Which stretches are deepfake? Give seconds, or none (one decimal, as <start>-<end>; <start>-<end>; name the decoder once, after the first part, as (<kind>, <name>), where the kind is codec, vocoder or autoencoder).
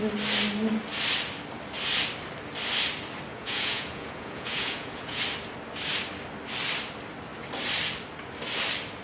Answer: 3.3-5.2 (vocoder, Vocos)